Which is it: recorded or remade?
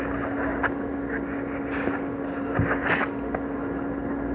recorded